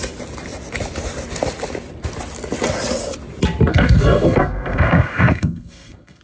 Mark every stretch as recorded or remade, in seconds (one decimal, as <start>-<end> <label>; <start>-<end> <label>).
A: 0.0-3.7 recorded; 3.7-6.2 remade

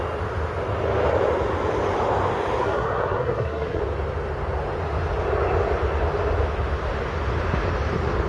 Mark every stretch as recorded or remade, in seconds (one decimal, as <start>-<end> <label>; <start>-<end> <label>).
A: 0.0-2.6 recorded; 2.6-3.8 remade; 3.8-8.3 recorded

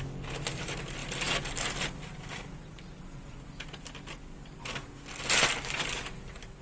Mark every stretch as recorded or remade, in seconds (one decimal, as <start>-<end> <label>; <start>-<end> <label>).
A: 0.0-6.6 recorded